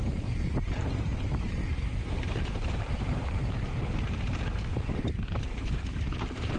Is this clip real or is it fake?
fake